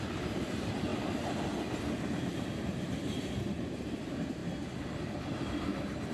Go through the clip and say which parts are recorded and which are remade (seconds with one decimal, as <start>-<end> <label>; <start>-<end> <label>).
0.0-0.9 remade; 0.9-1.9 recorded; 1.9-4.4 remade; 4.4-6.1 recorded